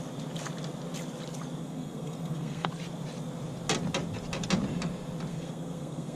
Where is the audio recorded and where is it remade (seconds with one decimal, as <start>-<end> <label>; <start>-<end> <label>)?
0.0-1.6 recorded; 1.6-2.7 remade; 2.7-5.3 recorded; 5.3-6.2 remade